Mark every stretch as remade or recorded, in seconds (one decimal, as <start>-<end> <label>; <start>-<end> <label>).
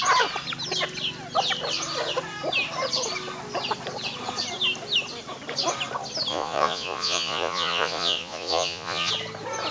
0.0-6.3 recorded; 6.3-9.1 remade; 9.1-9.7 recorded